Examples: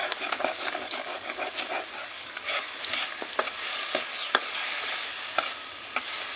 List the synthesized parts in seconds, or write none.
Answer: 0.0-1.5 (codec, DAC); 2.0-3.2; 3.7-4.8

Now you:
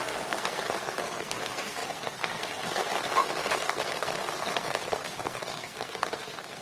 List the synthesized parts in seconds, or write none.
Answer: 0.0-6.6 (codec, SNAC)

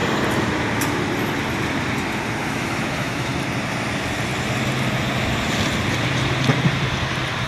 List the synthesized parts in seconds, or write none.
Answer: 2.4-3.3 (autoencoder, DAC-VAE)

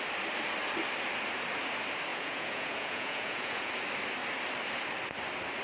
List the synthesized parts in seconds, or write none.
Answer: 2.1-3.7 (vocoder, Vocos)

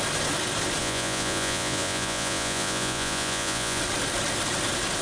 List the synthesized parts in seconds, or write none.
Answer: 0.8-3.8 (vocoder, Vocos)

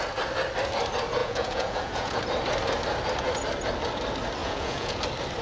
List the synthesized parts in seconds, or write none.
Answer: 1.2-2.2 (vocoder, Vocos); 4.4-5.0

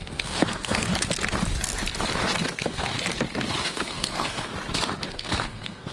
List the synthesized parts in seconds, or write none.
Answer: 0.0-0.9 (codec, SNAC); 2.4-2.9; 3.6-4.5; 5.1-5.9